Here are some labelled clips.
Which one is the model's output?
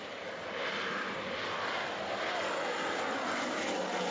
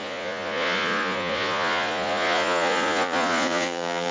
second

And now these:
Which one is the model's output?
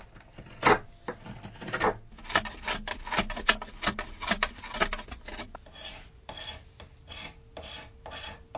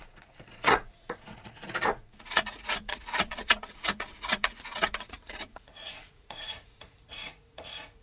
second